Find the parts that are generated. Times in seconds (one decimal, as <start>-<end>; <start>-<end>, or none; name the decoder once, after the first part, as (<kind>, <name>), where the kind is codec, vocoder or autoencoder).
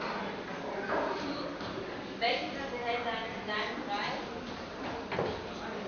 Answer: none